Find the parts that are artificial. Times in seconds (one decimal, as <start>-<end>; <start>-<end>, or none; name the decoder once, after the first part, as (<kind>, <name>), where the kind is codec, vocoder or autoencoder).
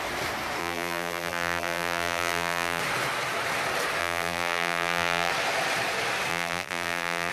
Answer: 0.6-2.8 (vocoder, BigVGAN v2); 4.0-5.3; 6.3-7.3